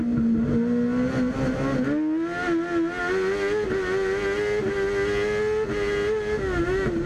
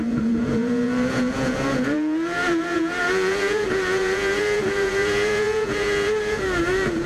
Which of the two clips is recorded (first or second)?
first